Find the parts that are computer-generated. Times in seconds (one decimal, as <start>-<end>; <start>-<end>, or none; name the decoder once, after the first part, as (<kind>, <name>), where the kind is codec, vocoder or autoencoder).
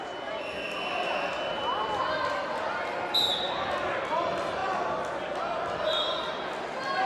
0.0-3.3 (vocoder, BigVGAN v2)